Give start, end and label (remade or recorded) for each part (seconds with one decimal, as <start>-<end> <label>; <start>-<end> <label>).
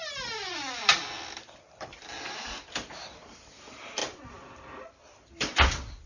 0.0-6.1 recorded